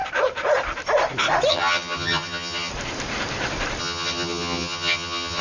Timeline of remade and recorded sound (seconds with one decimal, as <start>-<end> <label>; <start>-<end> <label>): 0.0-1.5 recorded; 1.5-2.7 remade; 2.7-3.8 recorded; 3.8-5.4 remade